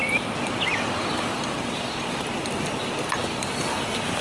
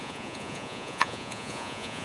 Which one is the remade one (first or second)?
second